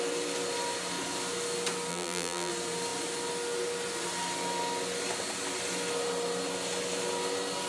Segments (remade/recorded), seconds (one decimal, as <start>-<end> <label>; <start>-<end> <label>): 0.0-1.9 recorded; 1.9-2.5 remade; 2.5-7.7 recorded